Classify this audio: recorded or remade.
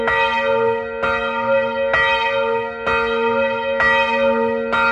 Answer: recorded